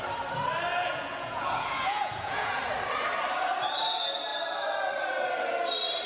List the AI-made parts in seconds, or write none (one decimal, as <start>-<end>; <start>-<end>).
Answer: 0.7-2.6